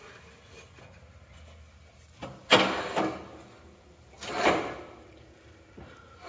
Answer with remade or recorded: recorded